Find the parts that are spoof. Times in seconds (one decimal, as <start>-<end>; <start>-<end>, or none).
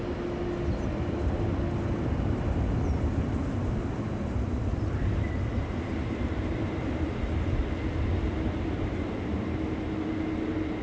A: 6.5-7.2